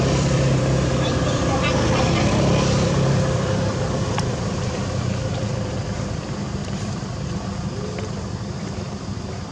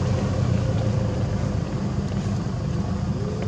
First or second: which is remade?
first